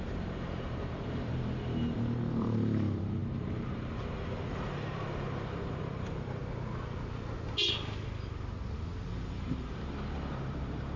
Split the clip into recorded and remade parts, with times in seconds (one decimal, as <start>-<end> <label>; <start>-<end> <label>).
0.0-6.4 remade; 6.4-9.1 recorded; 9.1-11.0 remade